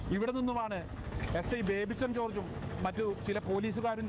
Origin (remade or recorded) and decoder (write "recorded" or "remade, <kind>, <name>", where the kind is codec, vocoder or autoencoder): remade, codec, DAC